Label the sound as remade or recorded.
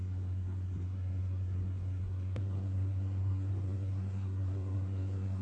remade